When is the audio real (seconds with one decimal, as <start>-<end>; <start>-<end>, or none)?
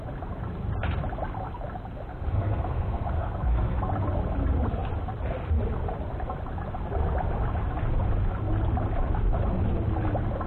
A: 0.0-2.1; 3.8-10.5